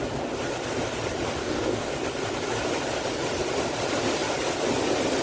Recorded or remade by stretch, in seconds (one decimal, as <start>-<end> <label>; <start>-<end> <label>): 0.0-1.4 recorded; 1.4-1.9 remade; 1.9-5.2 recorded